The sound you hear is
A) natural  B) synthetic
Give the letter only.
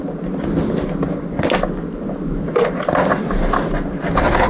A